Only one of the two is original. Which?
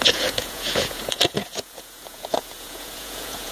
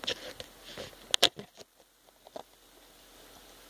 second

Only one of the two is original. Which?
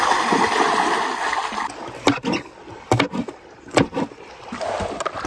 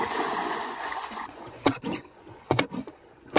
first